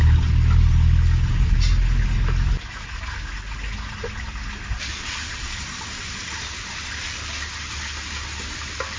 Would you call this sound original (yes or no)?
yes